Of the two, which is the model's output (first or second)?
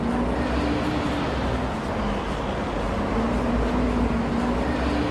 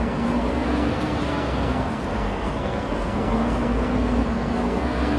second